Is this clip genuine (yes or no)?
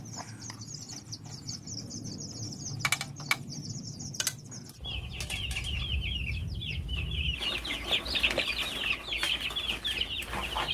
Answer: yes